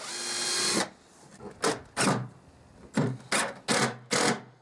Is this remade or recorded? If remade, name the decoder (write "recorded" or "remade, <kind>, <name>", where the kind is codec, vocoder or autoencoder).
recorded